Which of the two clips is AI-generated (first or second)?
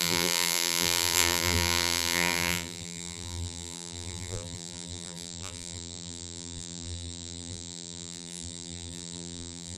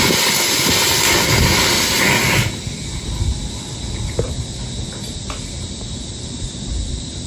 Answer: first